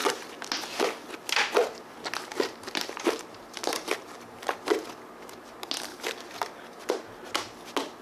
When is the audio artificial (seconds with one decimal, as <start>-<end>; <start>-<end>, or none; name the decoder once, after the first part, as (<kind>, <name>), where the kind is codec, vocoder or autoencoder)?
2.3-4.5 (vocoder, BigVGAN v2); 5.9-6.8